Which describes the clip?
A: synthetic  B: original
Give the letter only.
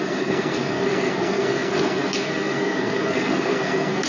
A